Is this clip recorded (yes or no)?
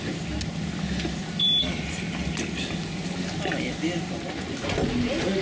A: yes